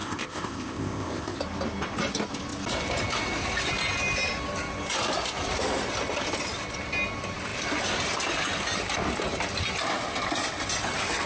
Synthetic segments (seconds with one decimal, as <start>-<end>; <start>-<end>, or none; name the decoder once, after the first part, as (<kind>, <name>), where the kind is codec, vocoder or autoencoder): 0.0-1.4 (codec, ZipCodec)